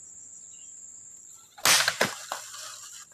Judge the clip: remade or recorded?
recorded